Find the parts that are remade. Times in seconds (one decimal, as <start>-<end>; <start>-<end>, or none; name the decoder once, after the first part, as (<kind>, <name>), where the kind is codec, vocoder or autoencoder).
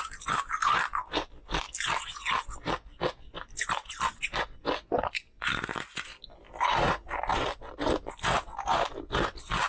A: none